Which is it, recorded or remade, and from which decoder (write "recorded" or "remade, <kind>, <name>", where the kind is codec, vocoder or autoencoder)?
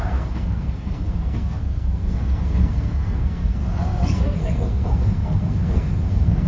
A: remade, codec, SNAC